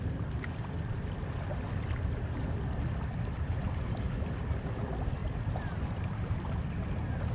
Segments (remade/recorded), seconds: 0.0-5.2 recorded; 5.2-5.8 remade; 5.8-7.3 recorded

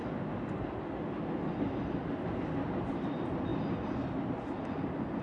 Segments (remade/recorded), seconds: 0.0-5.2 recorded

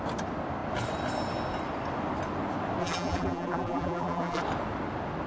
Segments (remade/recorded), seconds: 0.0-2.8 recorded; 2.8-4.4 remade; 4.4-5.3 recorded

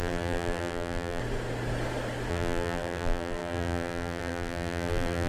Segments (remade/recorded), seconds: 0.0-1.2 remade; 1.2-2.3 recorded; 2.3-5.3 remade

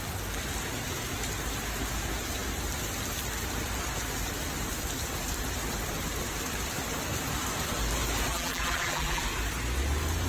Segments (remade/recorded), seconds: 0.0-8.3 recorded; 8.3-9.2 remade; 9.2-10.3 recorded